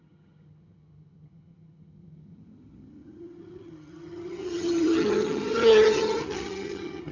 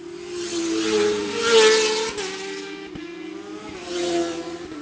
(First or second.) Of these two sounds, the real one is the second